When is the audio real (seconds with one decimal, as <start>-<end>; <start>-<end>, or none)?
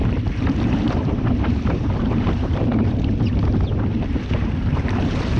none